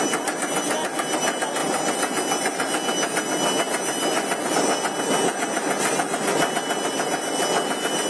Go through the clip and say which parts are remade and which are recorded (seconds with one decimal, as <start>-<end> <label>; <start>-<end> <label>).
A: 0.0-8.1 recorded